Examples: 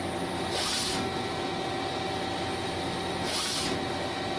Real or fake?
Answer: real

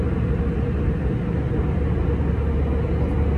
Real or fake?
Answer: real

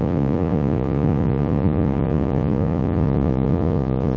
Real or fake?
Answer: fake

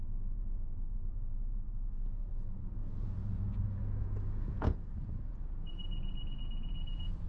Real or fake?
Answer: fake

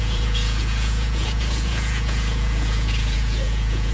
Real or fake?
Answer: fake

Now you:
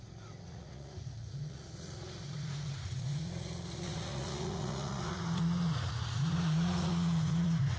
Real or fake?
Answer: fake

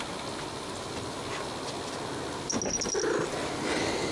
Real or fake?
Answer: real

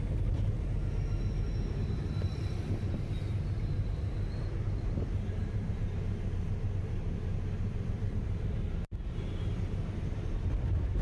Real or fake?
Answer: real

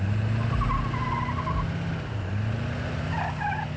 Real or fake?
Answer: real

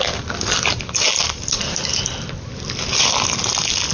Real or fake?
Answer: real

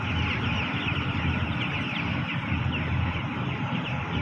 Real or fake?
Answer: real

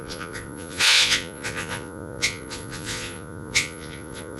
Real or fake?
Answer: fake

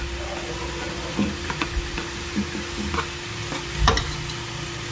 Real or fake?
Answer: real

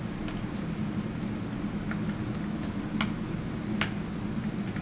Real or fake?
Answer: real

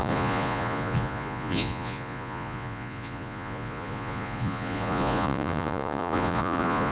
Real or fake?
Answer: fake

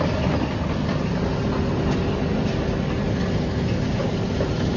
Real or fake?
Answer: real